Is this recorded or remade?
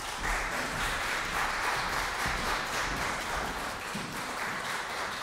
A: remade